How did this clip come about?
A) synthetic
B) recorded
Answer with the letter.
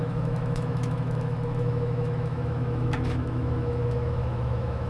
A